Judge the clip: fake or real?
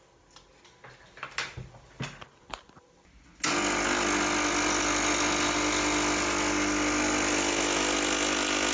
real